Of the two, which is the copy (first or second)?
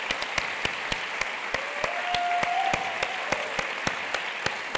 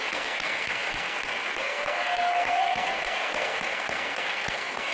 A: second